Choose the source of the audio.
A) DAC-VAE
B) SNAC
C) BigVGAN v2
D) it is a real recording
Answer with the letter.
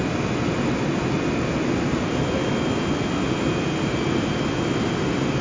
D